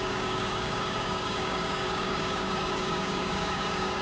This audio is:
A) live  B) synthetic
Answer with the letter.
B